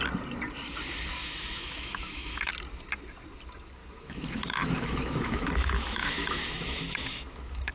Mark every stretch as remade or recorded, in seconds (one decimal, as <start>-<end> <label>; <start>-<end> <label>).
0.0-1.2 recorded; 1.2-2.5 remade; 2.5-3.8 recorded; 3.8-7.7 remade